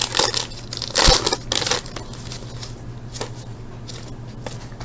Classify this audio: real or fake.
real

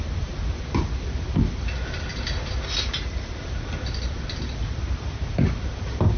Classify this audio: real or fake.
real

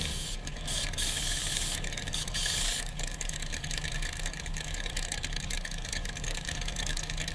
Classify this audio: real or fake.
fake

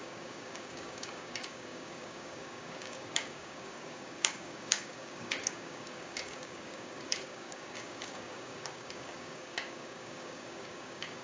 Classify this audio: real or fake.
fake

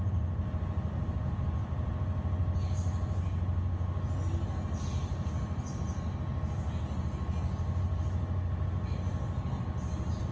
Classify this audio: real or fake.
real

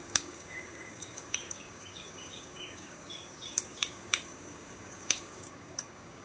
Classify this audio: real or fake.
fake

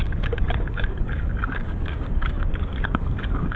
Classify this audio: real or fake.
fake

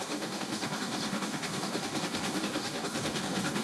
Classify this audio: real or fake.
fake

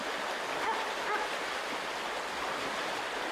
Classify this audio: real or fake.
real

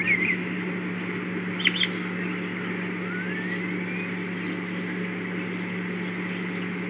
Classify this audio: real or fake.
real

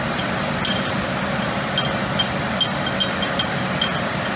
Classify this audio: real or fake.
real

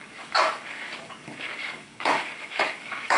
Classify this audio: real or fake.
fake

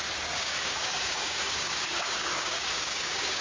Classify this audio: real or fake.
fake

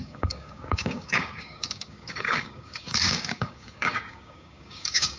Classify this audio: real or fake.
fake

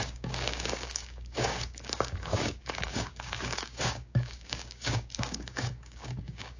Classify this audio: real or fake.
fake